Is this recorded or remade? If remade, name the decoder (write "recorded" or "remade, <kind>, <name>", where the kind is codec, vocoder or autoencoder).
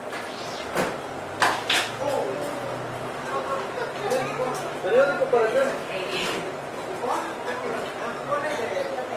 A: recorded